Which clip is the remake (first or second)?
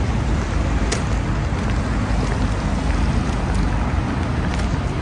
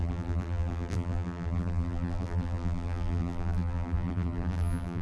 second